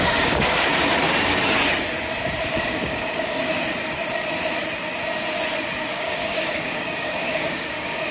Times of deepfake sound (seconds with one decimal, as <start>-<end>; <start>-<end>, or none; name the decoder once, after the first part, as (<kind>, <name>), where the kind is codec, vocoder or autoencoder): 0.0-0.7 (codec, DAC); 2.5-3.4; 5.9-8.1